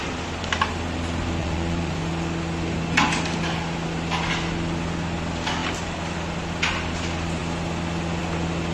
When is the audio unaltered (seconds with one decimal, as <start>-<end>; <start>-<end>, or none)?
0.0-1.4; 2.1-8.7